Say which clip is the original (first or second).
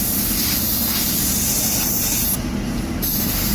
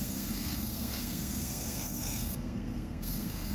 first